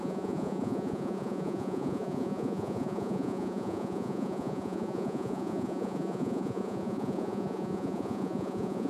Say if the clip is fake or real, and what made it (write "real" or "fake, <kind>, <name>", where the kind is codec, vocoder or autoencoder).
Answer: fake, vocoder, Vocos